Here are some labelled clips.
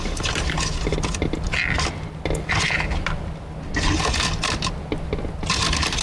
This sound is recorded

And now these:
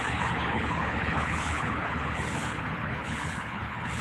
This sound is remade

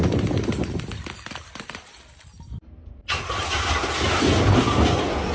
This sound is recorded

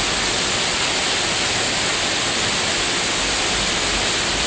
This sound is recorded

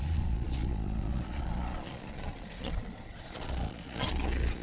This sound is remade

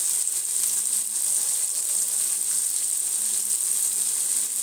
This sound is recorded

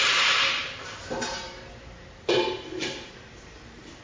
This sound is remade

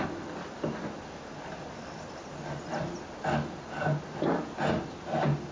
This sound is recorded